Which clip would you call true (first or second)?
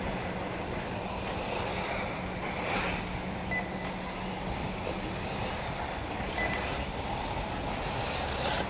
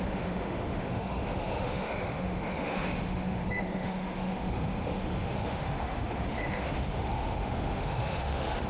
first